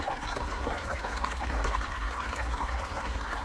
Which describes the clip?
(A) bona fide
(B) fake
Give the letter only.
B